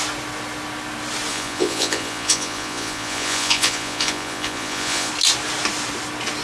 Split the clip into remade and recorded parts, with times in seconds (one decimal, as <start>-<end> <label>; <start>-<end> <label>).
0.0-1.3 recorded; 1.3-5.1 remade; 5.1-6.4 recorded